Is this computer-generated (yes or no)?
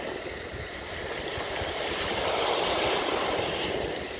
no